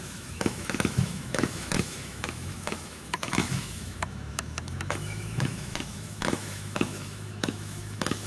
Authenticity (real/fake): fake